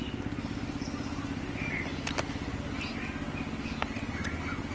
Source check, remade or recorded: recorded